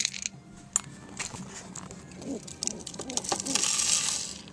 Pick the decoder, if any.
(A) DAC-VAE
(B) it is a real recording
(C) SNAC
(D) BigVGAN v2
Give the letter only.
B